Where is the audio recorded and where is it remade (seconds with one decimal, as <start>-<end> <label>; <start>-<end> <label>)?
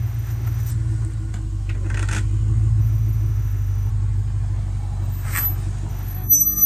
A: 0.0-0.7 remade; 0.7-2.8 recorded; 2.8-3.9 remade; 3.9-5.9 recorded; 5.9-6.7 remade